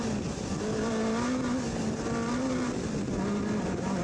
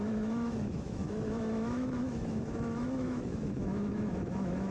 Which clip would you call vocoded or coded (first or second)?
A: second